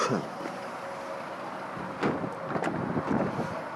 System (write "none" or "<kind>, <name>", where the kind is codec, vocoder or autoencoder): none